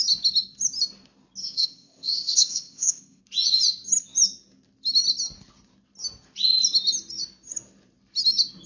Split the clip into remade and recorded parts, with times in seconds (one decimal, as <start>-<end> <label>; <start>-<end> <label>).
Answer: 0.0-1.4 recorded; 1.4-3.2 remade; 3.2-8.7 recorded